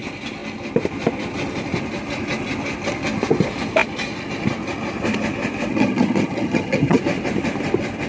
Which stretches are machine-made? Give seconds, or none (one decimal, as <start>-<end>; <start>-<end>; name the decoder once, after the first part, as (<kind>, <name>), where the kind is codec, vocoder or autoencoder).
5.7-7.0 (vocoder, HiFi-GAN)